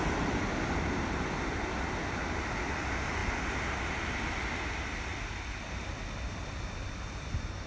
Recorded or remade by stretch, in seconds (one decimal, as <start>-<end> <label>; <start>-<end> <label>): 0.0-7.7 recorded